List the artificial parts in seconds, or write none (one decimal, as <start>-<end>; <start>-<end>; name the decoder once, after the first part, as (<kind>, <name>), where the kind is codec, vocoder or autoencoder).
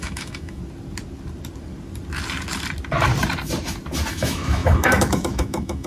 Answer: 0.0-0.6 (autoencoder, DAC-VAE); 4.1-5.9